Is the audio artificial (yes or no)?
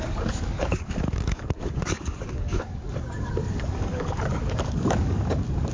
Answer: yes